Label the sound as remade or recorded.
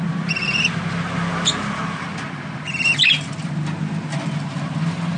recorded